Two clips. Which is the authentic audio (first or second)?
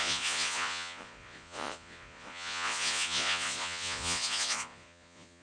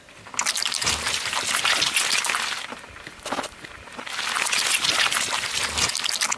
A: second